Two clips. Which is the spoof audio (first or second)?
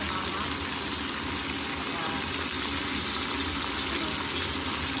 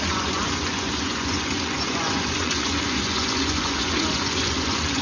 second